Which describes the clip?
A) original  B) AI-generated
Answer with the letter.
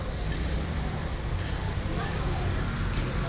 A